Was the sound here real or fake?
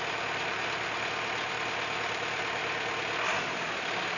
real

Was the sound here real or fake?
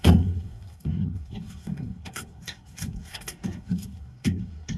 fake